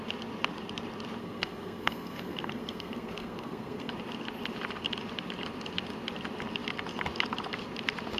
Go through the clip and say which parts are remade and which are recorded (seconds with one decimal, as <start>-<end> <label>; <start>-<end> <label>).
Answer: 0.0-1.2 recorded; 1.2-3.9 remade; 3.9-8.2 recorded